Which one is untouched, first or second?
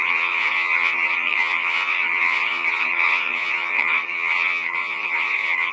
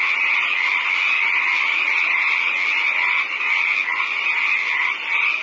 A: second